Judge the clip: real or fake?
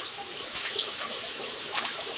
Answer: fake